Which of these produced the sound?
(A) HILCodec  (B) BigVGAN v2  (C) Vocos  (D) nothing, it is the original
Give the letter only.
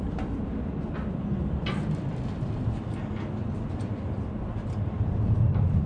D